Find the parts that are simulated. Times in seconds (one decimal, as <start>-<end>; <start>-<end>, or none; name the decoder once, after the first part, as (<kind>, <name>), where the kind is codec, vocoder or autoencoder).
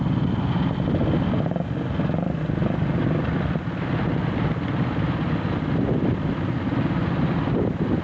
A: none